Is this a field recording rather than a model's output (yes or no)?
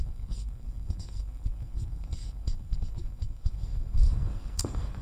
no